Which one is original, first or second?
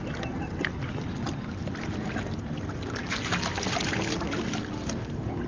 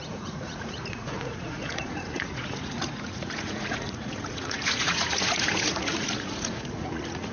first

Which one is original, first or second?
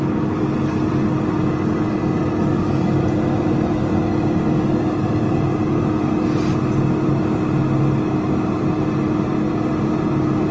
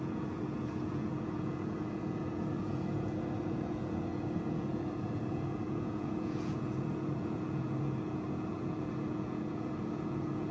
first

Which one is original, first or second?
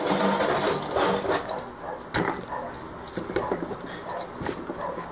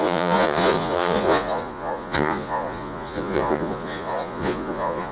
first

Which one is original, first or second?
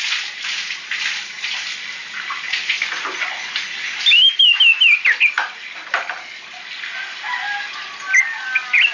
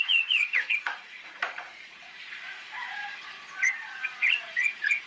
first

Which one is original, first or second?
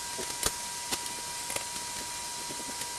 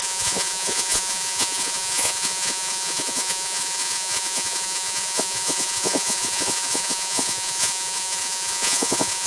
first